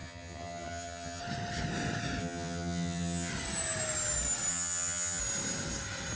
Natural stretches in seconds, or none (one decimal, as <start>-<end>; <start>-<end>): 1.2-2.2; 3.3-4.5; 5.2-6.2